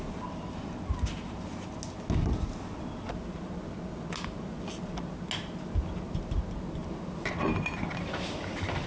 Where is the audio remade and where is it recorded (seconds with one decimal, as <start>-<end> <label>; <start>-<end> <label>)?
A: 0.0-8.9 recorded